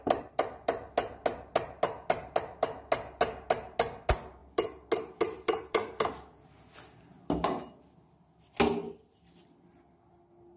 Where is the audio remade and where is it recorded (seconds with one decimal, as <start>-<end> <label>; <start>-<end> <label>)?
0.0-10.6 recorded